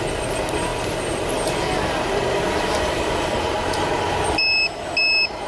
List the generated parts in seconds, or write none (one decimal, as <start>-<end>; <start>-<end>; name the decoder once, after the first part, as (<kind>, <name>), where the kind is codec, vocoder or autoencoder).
none